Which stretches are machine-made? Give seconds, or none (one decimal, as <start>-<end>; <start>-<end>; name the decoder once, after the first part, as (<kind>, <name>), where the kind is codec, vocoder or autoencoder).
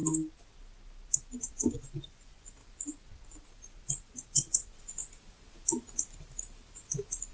1.5-2.6 (vocoder, Vocos); 3.9-5.0